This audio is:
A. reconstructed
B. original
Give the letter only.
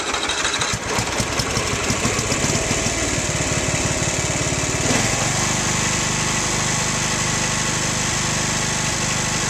B